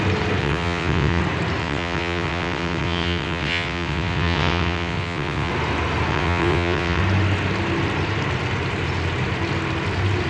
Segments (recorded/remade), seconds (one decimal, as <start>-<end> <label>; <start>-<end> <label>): 0.0-0.4 recorded; 0.4-1.2 remade; 1.2-1.6 recorded; 1.6-5.5 remade; 5.5-6.1 recorded; 6.1-7.0 remade; 7.0-10.3 recorded